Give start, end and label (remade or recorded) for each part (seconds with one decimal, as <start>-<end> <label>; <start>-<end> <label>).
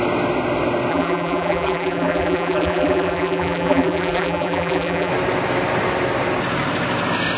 0.0-0.9 recorded; 0.9-5.1 remade; 5.1-7.4 recorded